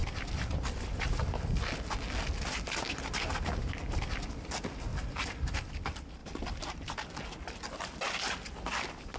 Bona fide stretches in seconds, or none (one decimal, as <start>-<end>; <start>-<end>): 1.2-6.2; 8.2-9.2